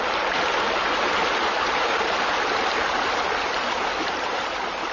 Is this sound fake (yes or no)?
no